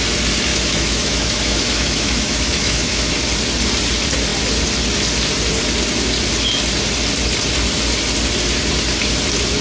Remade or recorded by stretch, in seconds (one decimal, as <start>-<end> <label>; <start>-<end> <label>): 0.0-0.5 recorded; 0.5-3.1 remade; 3.1-9.6 recorded